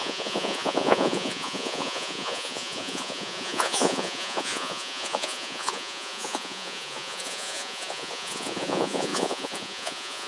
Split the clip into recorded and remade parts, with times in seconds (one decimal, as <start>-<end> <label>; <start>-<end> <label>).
0.0-10.3 remade